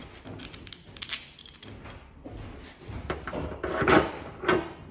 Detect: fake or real real